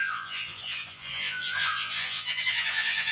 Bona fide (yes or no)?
no